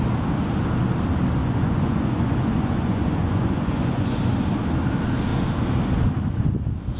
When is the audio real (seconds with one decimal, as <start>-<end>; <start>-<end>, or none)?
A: 0.0-1.4; 4.2-7.0